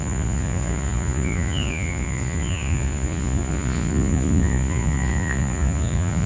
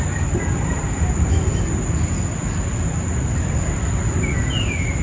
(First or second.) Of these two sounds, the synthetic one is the first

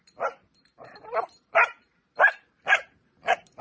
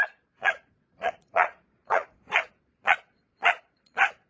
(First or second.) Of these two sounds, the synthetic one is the second